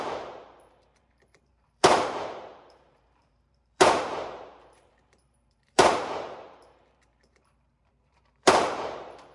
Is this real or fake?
fake